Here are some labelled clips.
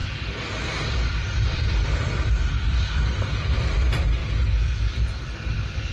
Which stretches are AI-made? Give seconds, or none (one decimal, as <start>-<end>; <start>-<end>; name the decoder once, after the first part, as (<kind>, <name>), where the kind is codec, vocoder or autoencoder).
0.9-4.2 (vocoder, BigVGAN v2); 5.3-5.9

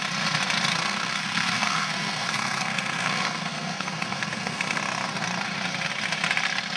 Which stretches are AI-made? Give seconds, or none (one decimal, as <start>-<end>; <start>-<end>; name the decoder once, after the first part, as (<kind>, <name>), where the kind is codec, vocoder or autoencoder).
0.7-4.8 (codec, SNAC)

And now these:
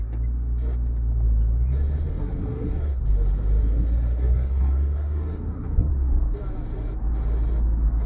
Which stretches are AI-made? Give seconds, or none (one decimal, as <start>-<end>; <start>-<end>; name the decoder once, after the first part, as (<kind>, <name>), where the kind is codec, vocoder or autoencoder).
2.2-3.0 (codec, SNAC); 3.6-5.9

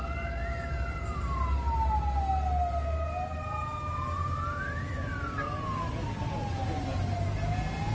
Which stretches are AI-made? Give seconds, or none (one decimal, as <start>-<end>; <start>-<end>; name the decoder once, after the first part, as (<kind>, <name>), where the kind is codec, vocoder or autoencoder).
none

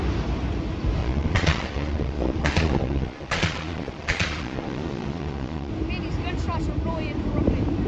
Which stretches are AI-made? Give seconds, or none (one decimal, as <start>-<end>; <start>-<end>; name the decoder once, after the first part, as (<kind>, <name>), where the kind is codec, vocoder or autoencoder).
1.0-5.7 (vocoder, Vocos)